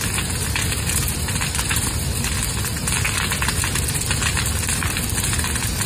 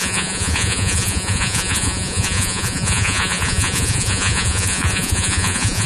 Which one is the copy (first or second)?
second